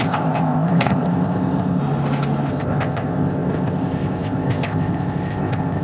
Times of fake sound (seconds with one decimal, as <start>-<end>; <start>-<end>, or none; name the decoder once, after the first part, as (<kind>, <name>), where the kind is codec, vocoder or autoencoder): 0.0-1.8 (codec, ZipCodec); 2.5-5.8